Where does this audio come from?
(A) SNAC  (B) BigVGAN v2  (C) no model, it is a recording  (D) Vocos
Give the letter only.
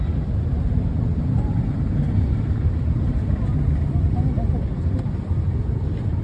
C